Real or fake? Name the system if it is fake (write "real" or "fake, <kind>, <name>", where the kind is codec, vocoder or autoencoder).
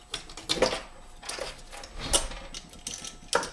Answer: real